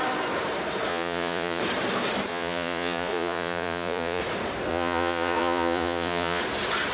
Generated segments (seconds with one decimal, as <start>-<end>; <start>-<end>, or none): 0.9-1.6; 2.3-4.2; 4.7-6.4